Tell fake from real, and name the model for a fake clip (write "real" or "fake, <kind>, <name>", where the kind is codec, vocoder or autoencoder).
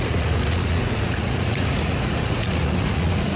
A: fake, vocoder, Vocos